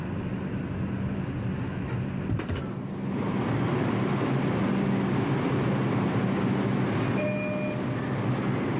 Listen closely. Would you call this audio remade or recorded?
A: recorded